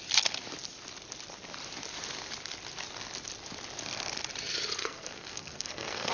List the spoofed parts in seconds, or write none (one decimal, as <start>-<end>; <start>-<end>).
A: 4.8-6.1